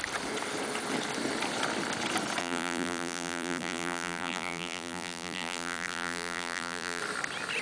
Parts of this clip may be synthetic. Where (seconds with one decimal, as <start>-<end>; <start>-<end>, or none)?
2.4-7.0